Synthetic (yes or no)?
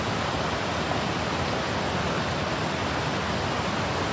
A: no